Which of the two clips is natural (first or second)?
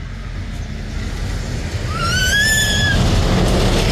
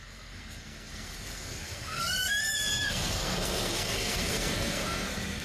first